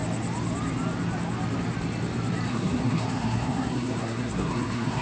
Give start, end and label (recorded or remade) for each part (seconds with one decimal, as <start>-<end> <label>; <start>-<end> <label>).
0.0-2.5 recorded; 2.5-5.0 remade